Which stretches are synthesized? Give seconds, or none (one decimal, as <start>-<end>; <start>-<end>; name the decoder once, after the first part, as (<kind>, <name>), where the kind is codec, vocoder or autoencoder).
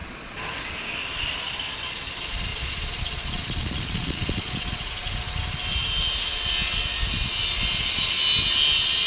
0.0-0.7 (vocoder, Vocos); 2.5-5.1